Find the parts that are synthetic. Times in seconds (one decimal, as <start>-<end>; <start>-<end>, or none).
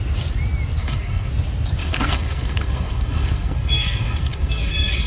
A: 0.8-1.3; 1.8-5.1